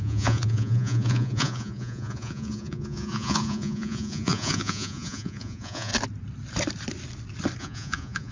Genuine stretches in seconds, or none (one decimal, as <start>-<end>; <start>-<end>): 5.9-7.6